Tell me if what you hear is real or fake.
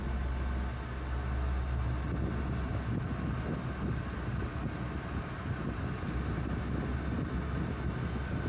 real